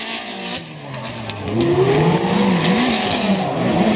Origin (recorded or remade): recorded